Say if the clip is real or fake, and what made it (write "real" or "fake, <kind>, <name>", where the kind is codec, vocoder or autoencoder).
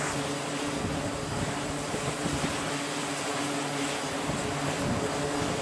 real